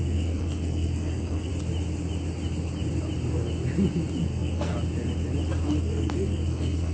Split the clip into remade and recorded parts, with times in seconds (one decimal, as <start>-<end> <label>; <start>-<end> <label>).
0.0-1.5 remade; 1.5-4.2 recorded; 4.2-4.7 remade; 4.7-5.8 recorded; 5.8-6.9 remade